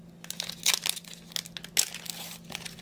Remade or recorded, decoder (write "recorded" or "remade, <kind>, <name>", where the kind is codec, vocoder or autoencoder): recorded